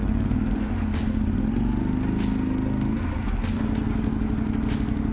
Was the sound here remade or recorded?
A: recorded